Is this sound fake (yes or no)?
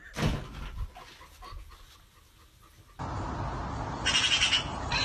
no